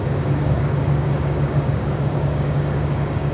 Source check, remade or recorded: remade